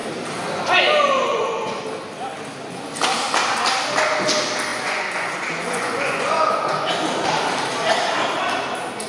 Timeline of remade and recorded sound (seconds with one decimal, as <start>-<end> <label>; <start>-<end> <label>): 0.0-1.3 recorded; 1.3-1.8 remade; 1.8-4.7 recorded; 4.7-6.9 remade; 6.9-9.1 recorded